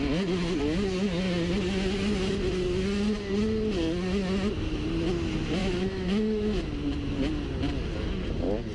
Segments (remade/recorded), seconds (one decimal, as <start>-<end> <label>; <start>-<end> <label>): 0.0-5.6 recorded; 5.6-6.6 remade; 6.6-8.7 recorded